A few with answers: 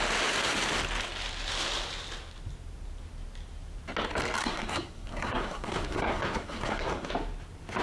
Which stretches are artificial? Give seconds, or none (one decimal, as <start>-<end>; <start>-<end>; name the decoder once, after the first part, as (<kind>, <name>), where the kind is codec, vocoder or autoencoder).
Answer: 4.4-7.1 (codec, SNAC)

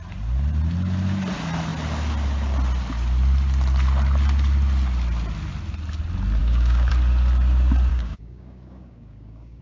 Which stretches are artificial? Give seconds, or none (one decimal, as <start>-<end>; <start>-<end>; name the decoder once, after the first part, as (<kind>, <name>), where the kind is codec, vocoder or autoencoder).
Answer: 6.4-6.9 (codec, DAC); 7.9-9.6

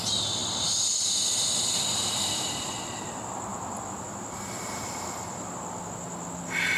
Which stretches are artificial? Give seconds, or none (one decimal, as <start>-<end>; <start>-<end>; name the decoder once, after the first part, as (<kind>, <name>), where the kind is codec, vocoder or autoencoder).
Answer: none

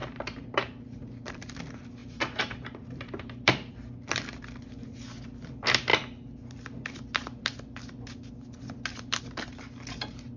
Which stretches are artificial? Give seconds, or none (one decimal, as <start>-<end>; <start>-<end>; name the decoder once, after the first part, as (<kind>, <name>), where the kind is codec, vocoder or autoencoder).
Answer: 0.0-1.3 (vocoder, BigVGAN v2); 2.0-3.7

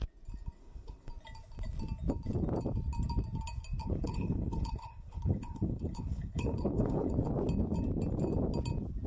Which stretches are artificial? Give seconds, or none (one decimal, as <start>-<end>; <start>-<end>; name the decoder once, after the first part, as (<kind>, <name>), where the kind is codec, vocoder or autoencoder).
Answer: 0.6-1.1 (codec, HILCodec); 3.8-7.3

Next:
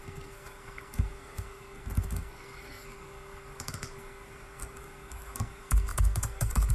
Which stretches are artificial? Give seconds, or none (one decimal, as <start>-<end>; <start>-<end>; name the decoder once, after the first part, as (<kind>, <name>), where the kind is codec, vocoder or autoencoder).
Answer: 0.0-6.7 (codec, SNAC)